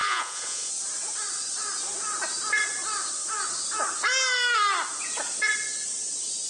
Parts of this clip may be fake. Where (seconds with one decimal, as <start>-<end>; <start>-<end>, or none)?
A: 0.0-0.7